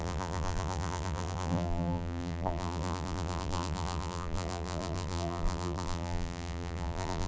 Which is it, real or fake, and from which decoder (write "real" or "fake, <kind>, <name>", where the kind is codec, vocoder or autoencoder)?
fake, vocoder, BigVGAN v2